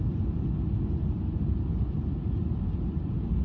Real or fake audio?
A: real